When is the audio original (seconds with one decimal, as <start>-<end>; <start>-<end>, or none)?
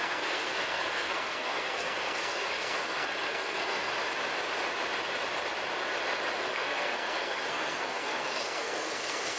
3.9-6.5